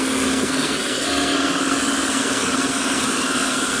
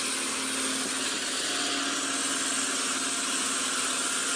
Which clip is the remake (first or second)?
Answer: first